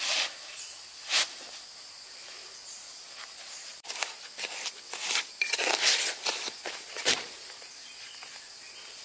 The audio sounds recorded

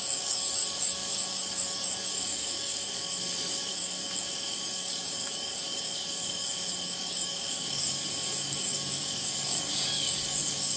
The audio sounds remade